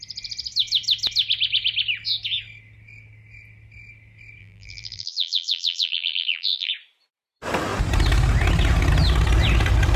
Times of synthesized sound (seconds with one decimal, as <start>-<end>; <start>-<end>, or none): 4.4-6.7